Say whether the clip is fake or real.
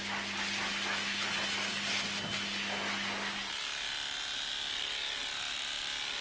real